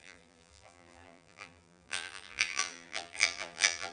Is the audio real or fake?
fake